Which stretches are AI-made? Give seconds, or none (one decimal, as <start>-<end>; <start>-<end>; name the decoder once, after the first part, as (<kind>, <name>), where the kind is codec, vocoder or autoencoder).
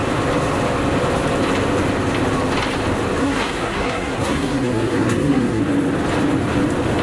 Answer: 3.2-5.6 (codec, SNAC)